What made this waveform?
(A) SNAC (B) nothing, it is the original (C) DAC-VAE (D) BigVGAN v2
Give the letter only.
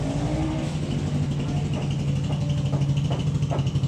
B